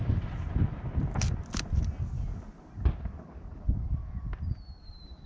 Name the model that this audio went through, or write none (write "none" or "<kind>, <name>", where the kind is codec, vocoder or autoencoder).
none